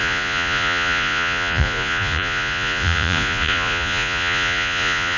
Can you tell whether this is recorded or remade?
remade